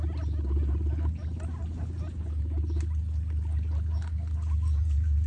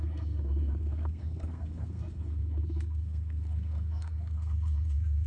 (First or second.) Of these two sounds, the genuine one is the first